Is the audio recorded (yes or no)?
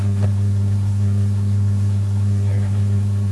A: no